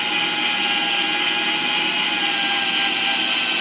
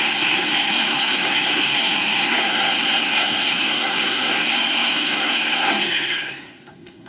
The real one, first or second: first